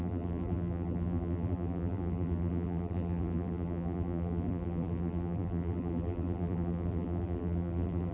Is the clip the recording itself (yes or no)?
no